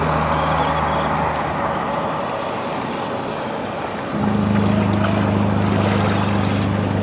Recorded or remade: recorded